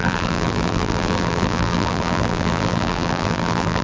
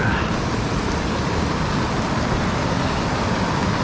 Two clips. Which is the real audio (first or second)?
second